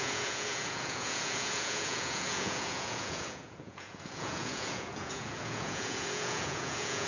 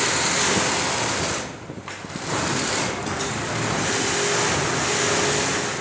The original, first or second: second